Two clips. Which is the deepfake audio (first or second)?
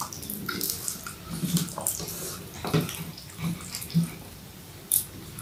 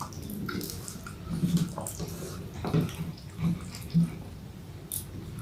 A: first